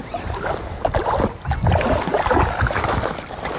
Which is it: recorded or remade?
recorded